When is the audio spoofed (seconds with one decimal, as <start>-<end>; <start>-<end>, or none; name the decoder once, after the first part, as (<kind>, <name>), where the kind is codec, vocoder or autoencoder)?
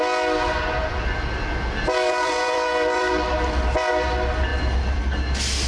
0.8-3.9 (vocoder, BigVGAN v2); 4.5-5.0